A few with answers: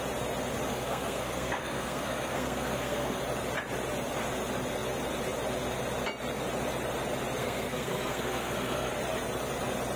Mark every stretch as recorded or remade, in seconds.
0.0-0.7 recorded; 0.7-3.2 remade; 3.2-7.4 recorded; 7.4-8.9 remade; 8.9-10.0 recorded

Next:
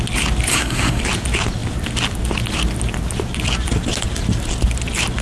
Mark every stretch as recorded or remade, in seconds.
0.0-0.5 recorded; 0.5-1.0 remade; 1.0-5.2 recorded

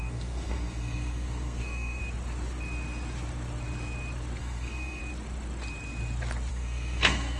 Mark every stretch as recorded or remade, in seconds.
0.0-2.0 remade; 2.0-4.4 recorded; 4.4-5.0 remade; 5.0-6.5 recorded; 6.5-7.4 remade

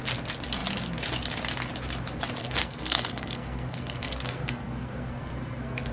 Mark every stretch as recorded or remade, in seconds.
0.0-2.4 recorded; 2.4-5.9 remade

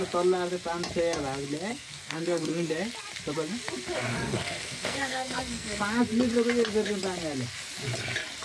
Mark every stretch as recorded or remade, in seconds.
0.0-1.7 recorded; 1.7-2.7 remade; 2.7-4.1 recorded; 4.1-5.8 remade; 5.8-8.4 recorded

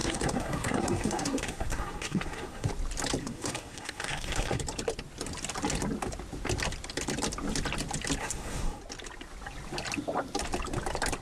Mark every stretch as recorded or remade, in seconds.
0.0-2.7 remade; 2.7-3.2 recorded; 3.2-4.6 remade; 4.6-8.2 recorded; 8.2-8.8 remade; 8.8-11.2 recorded

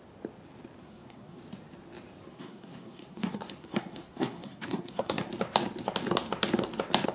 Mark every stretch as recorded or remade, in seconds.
0.0-0.8 recorded; 0.8-1.4 remade; 1.4-2.3 recorded; 2.3-5.3 remade; 5.3-7.1 recorded